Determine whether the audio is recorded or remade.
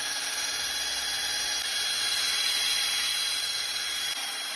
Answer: recorded